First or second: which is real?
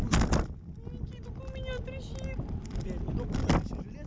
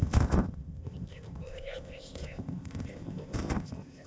first